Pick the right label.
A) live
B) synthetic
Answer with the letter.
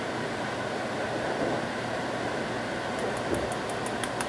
A